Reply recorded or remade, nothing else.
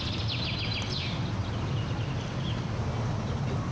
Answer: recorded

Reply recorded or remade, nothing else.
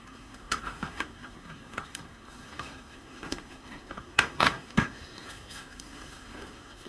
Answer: remade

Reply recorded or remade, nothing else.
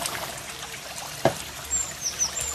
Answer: recorded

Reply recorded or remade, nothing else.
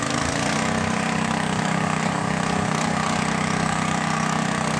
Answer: remade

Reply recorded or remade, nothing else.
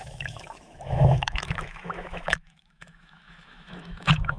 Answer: remade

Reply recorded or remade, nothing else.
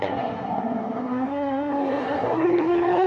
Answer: remade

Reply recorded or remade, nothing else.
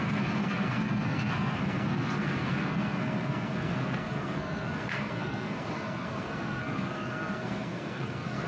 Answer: remade